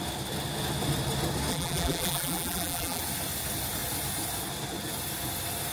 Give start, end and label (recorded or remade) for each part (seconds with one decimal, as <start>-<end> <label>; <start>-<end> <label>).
0.0-1.5 recorded; 1.5-3.0 remade; 3.0-5.7 recorded